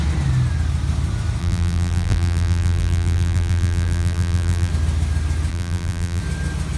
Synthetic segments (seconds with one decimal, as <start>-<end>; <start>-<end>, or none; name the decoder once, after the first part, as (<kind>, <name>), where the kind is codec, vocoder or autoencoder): 1.4-4.7 (vocoder, BigVGAN v2); 5.5-6.2